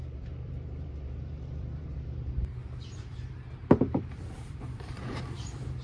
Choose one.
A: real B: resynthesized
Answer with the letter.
B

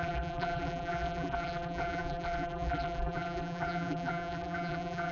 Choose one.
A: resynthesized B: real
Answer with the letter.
A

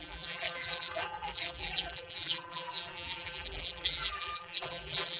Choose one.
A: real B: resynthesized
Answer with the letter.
B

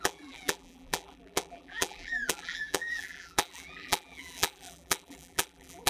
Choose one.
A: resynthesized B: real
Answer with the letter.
A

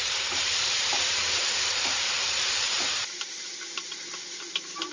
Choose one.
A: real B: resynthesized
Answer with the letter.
B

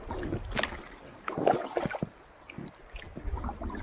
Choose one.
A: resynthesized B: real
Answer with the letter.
B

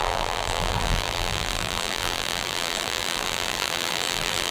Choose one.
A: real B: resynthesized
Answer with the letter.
B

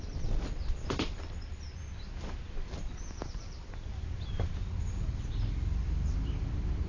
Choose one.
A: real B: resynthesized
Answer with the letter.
B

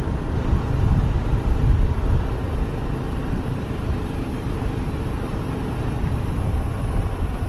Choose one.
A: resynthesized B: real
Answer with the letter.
A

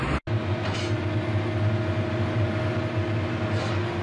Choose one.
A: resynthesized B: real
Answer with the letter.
B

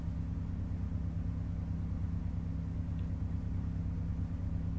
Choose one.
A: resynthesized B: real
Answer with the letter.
B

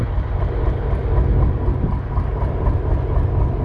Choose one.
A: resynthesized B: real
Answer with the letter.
B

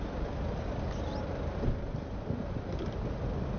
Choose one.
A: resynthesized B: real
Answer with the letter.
B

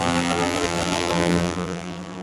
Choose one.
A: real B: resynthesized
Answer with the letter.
B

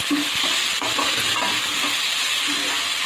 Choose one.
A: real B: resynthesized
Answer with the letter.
B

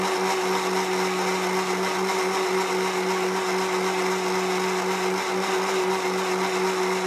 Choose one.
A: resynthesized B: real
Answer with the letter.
B